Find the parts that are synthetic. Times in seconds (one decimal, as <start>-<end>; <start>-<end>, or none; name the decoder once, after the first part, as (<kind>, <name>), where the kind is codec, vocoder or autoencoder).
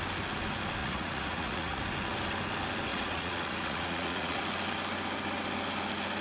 0.8-1.8 (vocoder, Vocos); 2.9-4.4